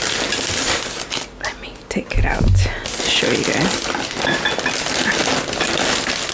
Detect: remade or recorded recorded